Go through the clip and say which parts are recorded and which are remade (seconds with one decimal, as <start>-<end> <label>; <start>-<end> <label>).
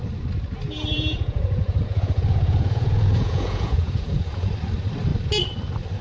0.0-0.9 recorded; 0.9-4.5 remade; 4.5-6.0 recorded